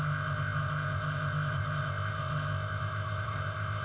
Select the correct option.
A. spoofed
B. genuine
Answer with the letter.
A